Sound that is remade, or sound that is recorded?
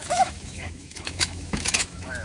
remade